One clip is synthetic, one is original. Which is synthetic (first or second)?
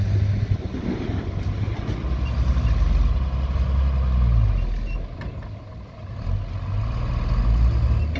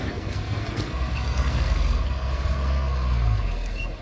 second